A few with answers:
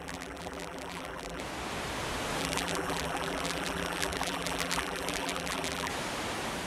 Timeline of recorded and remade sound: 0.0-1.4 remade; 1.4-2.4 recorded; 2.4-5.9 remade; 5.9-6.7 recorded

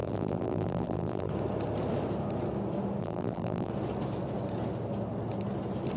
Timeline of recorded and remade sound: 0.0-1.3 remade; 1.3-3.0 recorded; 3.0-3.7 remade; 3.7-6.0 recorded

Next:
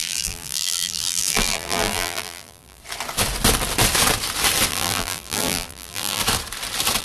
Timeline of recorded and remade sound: 0.0-2.8 remade; 2.8-4.7 recorded; 4.7-6.2 remade; 6.2-7.0 recorded

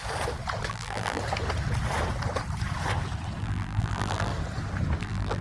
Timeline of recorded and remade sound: 0.0-0.7 recorded; 0.7-1.2 remade; 1.2-3.4 recorded; 3.4-4.3 remade; 4.3-5.0 recorded; 5.0-5.4 remade